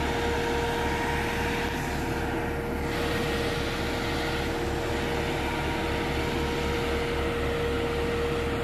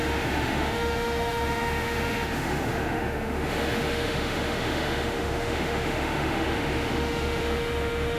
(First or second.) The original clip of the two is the first